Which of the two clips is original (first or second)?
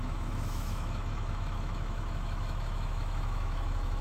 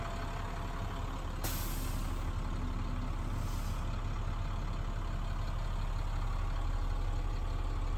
second